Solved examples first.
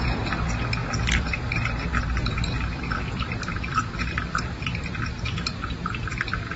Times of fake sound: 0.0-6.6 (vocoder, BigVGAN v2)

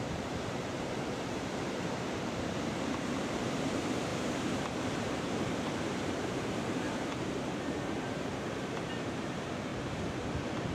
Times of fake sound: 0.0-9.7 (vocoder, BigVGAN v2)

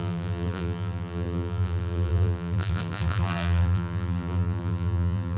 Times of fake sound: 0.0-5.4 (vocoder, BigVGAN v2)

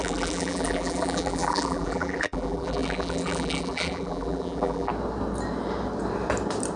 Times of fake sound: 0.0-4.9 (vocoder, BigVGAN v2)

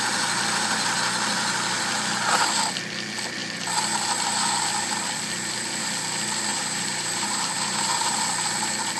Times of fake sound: 6.5-8.2 (vocoder, BigVGAN v2)

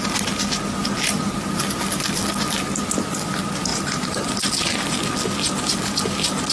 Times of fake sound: 3.7-4.3 (vocoder, BigVGAN v2)

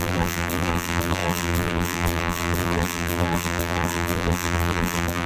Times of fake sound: 0.0-5.3 (vocoder, BigVGAN v2)

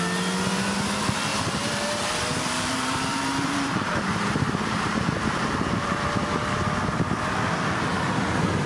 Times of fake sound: 1.3-6.1 (vocoder, BigVGAN v2)